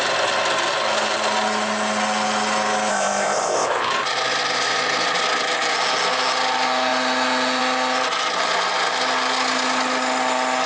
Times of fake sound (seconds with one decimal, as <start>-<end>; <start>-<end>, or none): 2.9-3.9